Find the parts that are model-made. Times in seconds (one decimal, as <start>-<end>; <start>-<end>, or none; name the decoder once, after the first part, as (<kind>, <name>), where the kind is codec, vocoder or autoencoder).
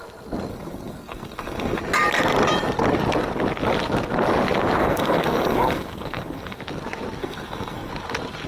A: 0.5-1.8 (codec, SNAC); 4.8-6.6; 7.2-7.9